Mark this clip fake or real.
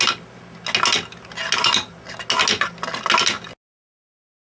real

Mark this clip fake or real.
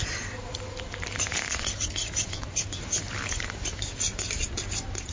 fake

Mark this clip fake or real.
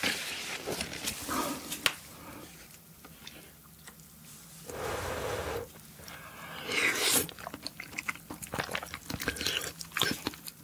real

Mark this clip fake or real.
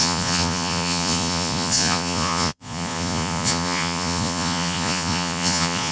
fake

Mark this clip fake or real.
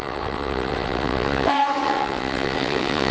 fake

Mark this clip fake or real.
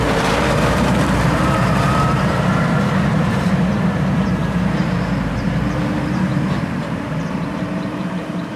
fake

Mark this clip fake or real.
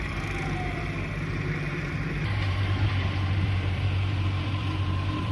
fake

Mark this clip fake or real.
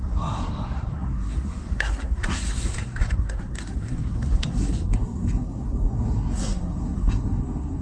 fake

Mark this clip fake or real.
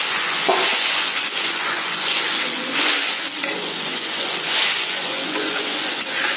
fake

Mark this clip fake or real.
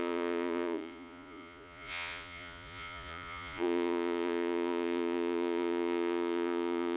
fake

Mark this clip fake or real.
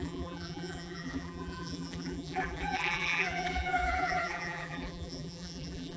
fake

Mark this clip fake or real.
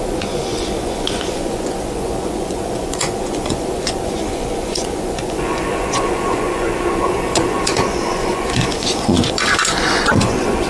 fake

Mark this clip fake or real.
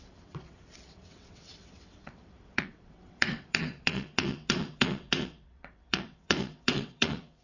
fake